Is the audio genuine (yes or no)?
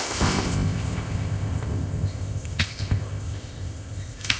no